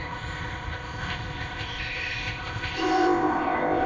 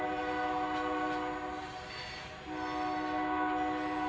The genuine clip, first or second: second